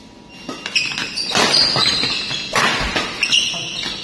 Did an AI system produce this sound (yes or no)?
no